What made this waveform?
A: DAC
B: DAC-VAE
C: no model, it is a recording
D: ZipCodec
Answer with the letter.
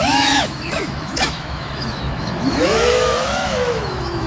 B